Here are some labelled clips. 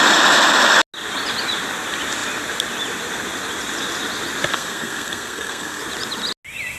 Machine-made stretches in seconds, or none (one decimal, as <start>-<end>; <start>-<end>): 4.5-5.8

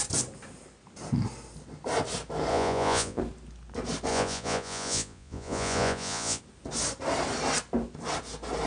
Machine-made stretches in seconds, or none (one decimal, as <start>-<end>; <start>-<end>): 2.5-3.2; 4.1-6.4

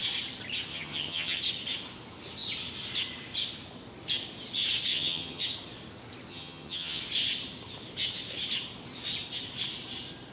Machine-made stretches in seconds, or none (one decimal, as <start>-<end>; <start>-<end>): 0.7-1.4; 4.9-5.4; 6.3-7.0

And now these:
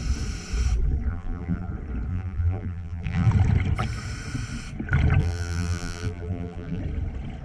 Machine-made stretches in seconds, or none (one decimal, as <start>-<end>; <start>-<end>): 1.1-1.7; 2.1-3.3; 5.2-6.8

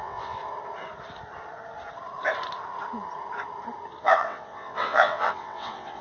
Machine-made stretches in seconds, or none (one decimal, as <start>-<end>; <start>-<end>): 0.0-0.4; 4.0-6.0